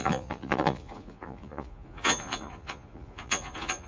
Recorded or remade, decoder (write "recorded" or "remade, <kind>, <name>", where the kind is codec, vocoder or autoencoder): remade, vocoder, Vocos